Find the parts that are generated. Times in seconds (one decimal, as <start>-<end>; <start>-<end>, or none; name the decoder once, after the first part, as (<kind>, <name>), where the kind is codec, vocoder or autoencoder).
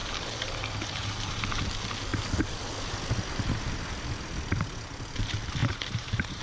0.0-1.5 (vocoder, BigVGAN v2); 5.6-6.4